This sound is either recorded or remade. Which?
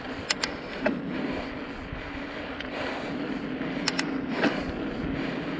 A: recorded